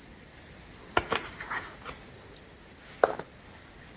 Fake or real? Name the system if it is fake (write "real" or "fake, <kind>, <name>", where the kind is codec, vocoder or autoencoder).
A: real